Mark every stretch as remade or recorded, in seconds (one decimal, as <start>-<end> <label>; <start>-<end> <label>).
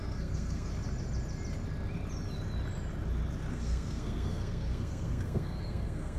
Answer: 0.0-0.7 remade; 0.7-3.5 recorded; 3.5-6.2 remade